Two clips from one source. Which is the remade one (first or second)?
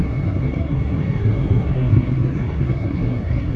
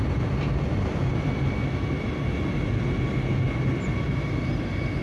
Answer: first